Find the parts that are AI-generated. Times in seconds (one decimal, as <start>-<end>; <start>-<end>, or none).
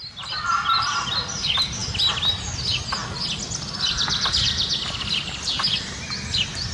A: none